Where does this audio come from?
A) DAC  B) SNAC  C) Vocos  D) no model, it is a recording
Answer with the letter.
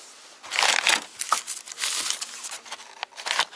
D